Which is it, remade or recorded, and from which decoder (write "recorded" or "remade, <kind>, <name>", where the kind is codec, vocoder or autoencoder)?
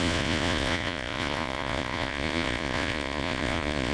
remade, vocoder, Vocos